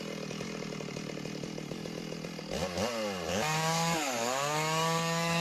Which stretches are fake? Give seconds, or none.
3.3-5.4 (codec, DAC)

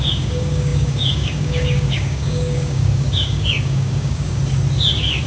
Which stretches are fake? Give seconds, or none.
0.0-4.4 (codec, DAC)